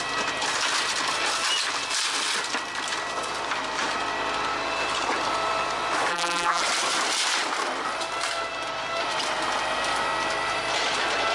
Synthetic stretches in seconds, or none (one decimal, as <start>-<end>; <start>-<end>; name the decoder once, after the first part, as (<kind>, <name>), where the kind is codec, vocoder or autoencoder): 6.1-6.6 (vocoder, BigVGAN v2)